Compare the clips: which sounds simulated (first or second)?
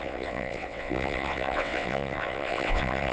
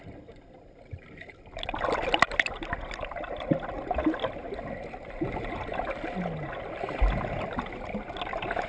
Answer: first